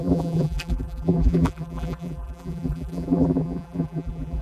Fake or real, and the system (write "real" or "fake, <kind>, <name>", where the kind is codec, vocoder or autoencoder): fake, vocoder, BigVGAN v2